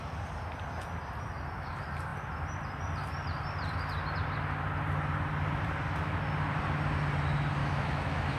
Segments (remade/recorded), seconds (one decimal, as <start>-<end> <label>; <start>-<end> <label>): 0.0-7.6 recorded; 7.6-8.4 remade